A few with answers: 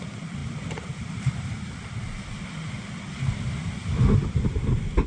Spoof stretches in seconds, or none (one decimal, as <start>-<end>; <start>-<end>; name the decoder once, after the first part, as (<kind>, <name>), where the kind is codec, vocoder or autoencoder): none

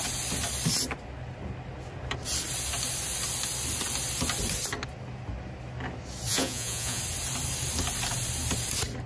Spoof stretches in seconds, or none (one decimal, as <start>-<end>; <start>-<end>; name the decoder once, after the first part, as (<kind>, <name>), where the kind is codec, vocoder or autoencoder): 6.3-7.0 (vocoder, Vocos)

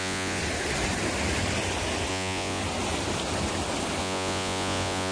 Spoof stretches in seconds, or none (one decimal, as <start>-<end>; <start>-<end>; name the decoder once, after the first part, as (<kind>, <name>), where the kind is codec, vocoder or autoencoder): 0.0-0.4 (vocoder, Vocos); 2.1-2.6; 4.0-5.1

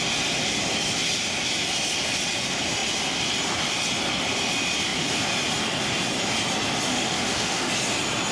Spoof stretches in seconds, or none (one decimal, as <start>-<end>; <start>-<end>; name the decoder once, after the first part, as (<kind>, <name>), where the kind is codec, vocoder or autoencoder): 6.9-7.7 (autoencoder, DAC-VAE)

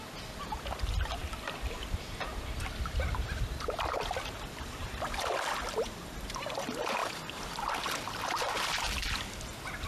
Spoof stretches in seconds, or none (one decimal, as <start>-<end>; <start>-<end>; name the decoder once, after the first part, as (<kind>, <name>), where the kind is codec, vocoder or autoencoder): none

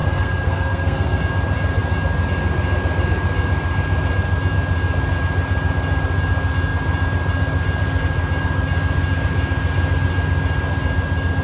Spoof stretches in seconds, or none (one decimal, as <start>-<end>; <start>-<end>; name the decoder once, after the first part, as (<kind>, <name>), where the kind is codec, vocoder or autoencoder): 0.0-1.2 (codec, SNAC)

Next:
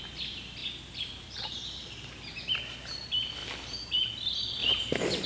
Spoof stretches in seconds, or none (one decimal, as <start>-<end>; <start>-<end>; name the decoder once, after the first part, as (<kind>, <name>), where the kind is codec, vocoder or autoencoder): 0.6-2.4 (vocoder, BigVGAN v2)

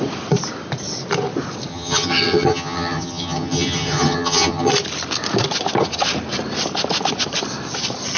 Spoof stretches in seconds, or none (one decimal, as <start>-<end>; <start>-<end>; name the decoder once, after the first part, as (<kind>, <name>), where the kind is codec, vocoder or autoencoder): 1.7-4.7 (vocoder, HiFi-GAN)